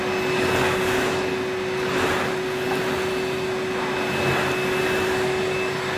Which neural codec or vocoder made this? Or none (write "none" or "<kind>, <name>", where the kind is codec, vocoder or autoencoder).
none